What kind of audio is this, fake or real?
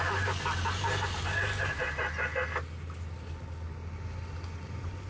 real